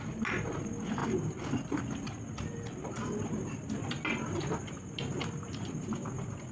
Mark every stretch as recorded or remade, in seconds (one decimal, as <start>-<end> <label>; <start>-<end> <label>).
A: 0.0-6.5 recorded